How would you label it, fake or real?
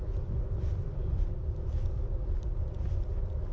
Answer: real